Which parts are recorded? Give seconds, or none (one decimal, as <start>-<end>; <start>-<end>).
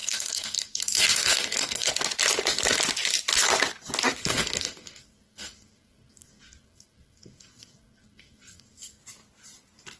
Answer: 1.9-4.2; 9.0-10.0